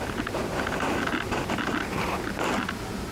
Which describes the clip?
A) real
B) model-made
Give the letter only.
A